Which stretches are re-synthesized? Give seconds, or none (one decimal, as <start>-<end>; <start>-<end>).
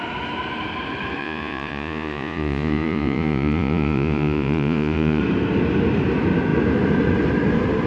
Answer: 1.2-5.2